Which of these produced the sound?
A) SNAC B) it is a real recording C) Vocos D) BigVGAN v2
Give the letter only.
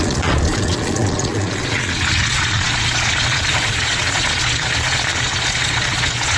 C